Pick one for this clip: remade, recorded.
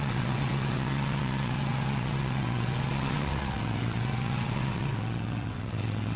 remade